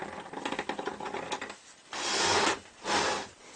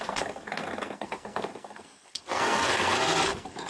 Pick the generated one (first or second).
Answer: second